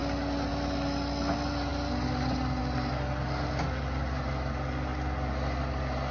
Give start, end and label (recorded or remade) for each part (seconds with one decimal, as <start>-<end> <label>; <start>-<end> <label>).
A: 0.0-6.1 recorded